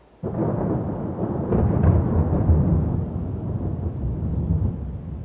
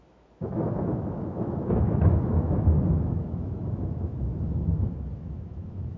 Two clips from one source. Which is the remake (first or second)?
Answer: second